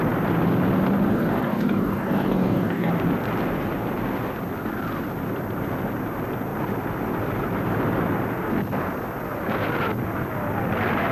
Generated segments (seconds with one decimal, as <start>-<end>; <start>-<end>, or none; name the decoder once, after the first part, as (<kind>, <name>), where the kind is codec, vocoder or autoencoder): 1.1-2.9 (codec, DAC)